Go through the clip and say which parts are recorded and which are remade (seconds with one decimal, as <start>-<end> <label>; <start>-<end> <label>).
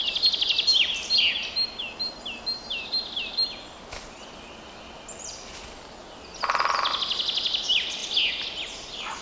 0.0-9.2 recorded